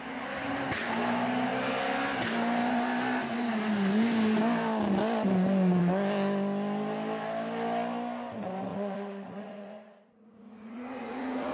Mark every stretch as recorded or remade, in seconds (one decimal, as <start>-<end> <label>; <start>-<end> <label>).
0.0-8.7 recorded; 8.7-11.5 remade